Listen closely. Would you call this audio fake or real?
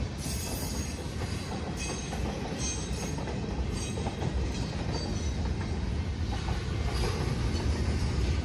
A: real